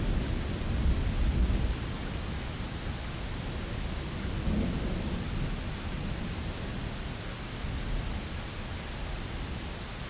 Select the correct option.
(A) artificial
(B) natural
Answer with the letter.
B